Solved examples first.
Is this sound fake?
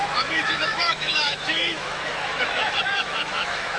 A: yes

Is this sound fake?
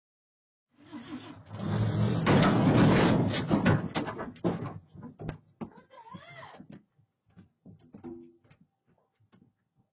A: no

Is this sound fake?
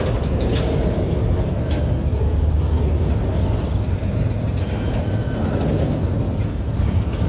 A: no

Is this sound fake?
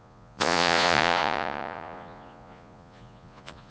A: yes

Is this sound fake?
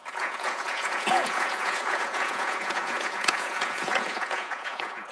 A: yes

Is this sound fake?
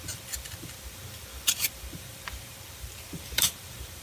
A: yes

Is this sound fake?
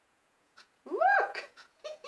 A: yes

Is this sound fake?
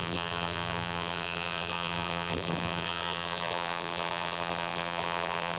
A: yes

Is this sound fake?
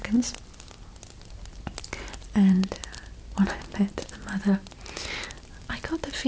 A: no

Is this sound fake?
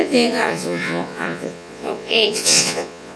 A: yes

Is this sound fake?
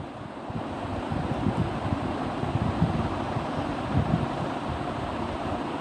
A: no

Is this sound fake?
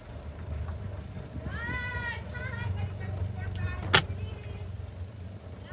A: no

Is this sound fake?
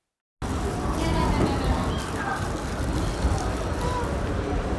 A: no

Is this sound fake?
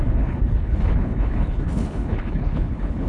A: yes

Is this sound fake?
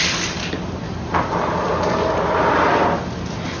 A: no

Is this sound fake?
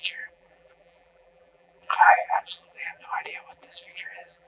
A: yes